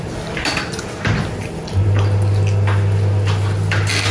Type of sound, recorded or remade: recorded